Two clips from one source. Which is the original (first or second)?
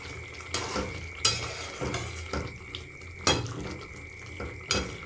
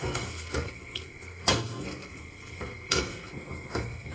first